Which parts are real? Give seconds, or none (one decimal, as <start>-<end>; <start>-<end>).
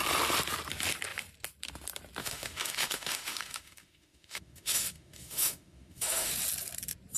0.0-2.2; 6.3-7.2